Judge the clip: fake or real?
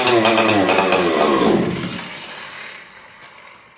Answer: real